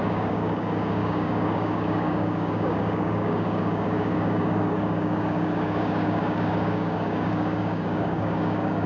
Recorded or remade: remade